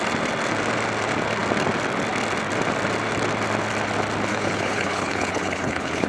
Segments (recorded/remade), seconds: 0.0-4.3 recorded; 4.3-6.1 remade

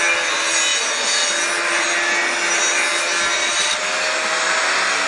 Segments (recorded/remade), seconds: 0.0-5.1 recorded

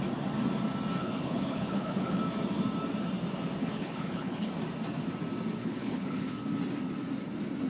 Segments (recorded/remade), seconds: 0.0-1.0 recorded; 1.0-2.2 remade; 2.2-3.6 recorded; 3.6-4.5 remade; 4.5-5.6 recorded; 5.6-6.3 remade; 6.3-7.7 recorded